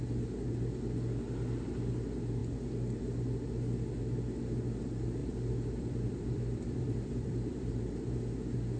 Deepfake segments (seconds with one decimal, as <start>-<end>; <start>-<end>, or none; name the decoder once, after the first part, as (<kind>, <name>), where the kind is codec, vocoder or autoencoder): 5.2-7.8 (vocoder, BigVGAN v2)